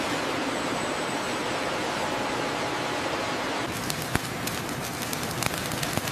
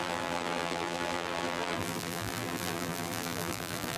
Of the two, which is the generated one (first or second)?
second